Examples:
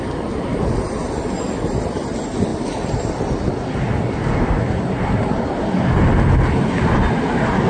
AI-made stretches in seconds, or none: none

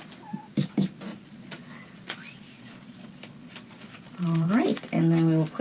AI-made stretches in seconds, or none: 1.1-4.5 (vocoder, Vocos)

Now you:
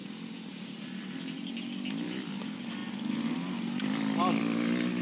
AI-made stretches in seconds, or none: none

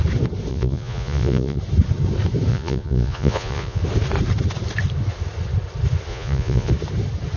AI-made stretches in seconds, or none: 0.5-1.6 (vocoder, Vocos); 2.5-3.8; 6.1-6.7